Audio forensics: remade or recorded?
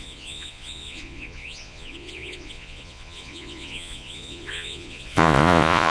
remade